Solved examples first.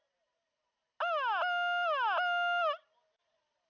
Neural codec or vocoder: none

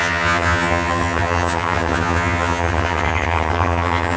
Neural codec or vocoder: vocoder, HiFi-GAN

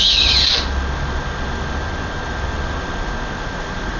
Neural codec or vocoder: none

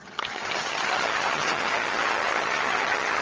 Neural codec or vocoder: vocoder, HiFi-GAN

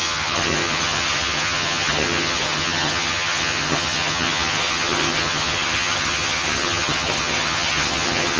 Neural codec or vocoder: vocoder, HiFi-GAN